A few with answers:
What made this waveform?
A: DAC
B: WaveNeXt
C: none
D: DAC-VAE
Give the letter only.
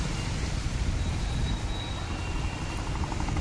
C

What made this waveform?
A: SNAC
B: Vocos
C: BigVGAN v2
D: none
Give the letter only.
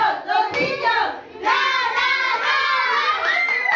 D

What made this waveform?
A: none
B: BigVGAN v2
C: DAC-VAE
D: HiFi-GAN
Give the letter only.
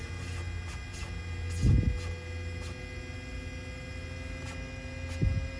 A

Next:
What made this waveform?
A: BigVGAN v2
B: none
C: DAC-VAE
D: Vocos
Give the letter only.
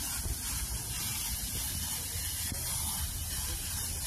B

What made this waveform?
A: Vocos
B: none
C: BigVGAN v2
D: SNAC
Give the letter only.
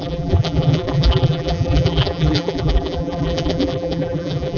C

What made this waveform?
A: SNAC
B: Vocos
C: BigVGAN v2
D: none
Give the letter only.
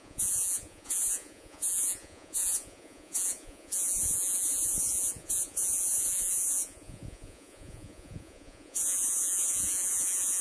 B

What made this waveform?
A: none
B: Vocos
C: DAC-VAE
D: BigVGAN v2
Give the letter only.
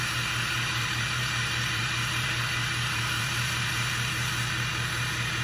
D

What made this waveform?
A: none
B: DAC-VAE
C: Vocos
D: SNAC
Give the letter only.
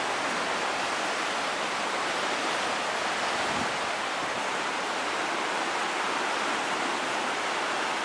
A